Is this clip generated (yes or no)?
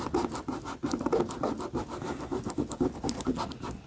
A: no